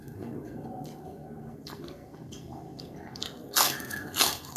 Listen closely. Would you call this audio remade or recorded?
remade